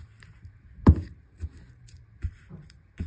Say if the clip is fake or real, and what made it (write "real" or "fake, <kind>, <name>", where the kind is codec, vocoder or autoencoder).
fake, vocoder, BigVGAN v2